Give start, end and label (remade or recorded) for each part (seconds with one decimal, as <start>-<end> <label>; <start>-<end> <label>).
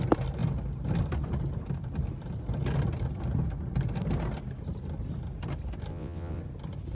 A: 0.0-5.9 recorded; 5.9-6.4 remade; 6.4-6.9 recorded